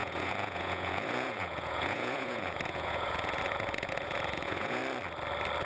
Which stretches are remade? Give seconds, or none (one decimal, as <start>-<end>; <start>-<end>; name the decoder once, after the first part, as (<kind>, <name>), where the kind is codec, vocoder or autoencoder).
0.0-4.8 (vocoder, Vocos)